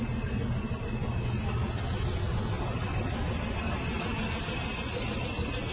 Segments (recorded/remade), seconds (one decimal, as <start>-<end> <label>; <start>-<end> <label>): 0.0-5.7 recorded